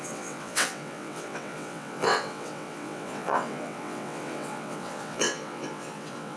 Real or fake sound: fake